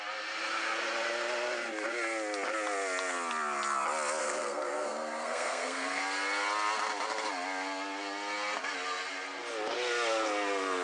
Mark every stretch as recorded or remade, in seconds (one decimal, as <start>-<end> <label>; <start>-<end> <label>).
0.0-4.2 recorded; 4.2-6.0 remade; 6.0-10.8 recorded